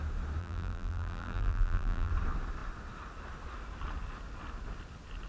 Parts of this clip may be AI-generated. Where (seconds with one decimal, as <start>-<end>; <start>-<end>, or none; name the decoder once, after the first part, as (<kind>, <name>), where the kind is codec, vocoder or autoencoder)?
0.4-2.1 (vocoder, BigVGAN v2)